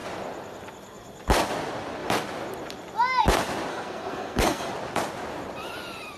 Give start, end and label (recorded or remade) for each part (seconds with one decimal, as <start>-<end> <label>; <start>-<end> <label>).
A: 0.0-3.7 recorded; 3.7-4.7 remade; 4.7-6.2 recorded